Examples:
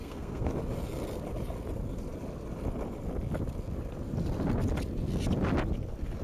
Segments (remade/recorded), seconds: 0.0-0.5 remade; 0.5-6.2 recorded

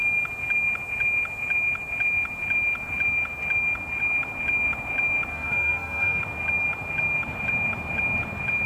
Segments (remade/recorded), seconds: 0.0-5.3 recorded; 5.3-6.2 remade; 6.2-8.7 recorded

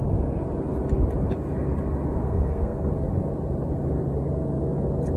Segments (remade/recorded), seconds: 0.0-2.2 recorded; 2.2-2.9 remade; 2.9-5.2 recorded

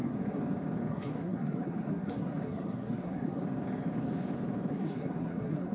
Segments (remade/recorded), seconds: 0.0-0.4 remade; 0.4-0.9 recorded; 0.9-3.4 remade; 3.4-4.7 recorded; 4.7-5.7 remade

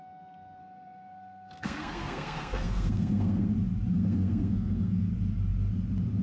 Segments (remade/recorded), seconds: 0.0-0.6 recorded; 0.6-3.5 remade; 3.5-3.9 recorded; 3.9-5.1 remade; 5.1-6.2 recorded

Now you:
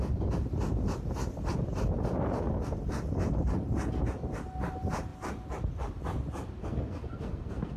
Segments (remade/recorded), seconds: 0.0-6.6 recorded; 6.6-7.8 remade